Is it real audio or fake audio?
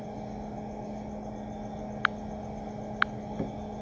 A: real